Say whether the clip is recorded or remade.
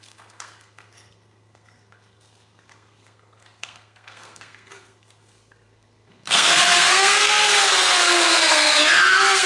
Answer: remade